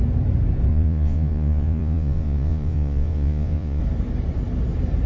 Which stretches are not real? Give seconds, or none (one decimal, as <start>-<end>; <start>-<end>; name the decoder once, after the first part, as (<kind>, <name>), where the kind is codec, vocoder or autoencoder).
0.7-3.8 (vocoder, Vocos)